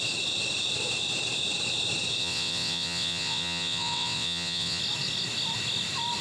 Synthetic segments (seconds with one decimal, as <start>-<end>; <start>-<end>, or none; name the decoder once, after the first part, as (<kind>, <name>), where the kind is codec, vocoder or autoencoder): 2.2-4.8 (vocoder, WaveNeXt)